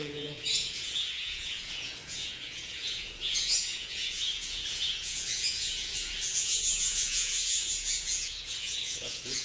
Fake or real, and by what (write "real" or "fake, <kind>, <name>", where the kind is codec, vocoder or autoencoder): fake, vocoder, Vocos